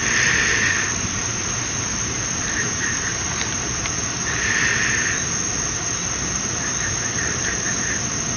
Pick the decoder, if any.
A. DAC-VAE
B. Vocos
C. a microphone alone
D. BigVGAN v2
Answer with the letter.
D